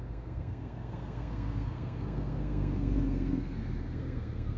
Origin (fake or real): fake